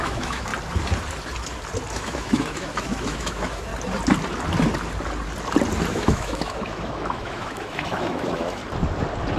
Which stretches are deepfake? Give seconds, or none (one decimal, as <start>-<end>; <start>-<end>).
0.0-0.5; 1.9-3.7; 5.9-8.6